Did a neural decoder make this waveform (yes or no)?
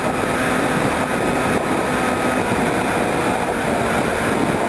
no